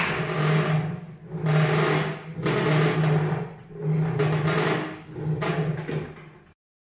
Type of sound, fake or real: real